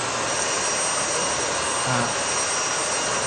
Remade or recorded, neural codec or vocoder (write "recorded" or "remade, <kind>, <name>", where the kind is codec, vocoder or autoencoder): recorded